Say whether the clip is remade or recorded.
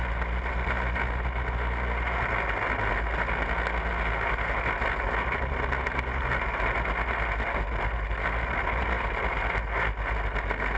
recorded